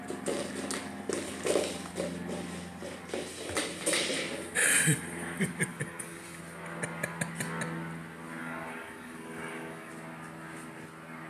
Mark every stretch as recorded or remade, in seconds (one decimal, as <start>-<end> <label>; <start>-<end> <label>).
0.0-5.7 recorded; 5.7-6.4 remade; 6.4-8.4 recorded; 8.4-9.9 remade; 9.9-11.3 recorded